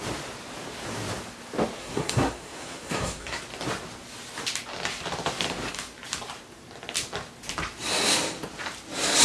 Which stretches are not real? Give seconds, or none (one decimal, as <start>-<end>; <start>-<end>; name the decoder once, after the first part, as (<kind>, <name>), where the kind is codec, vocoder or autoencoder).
1.8-3.4 (codec, SNAC)